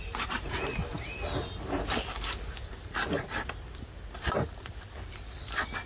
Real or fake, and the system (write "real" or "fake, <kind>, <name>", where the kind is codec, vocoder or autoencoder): real